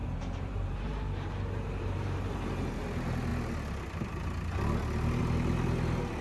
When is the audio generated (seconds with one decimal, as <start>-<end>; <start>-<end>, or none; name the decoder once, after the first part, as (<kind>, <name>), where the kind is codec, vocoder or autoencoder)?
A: 0.0-2.8 (vocoder, BigVGAN v2)